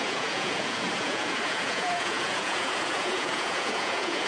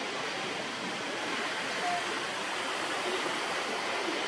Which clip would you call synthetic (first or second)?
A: first